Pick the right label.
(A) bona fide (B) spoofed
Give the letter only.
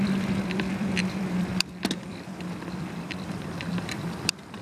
B